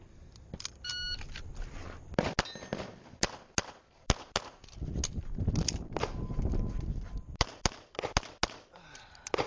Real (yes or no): yes